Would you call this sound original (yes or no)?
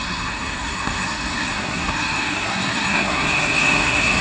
no